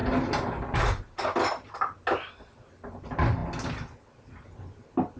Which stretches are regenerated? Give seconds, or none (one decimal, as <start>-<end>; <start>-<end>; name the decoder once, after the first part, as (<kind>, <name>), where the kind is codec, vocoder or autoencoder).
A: none